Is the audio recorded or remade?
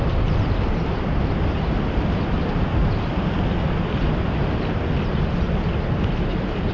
recorded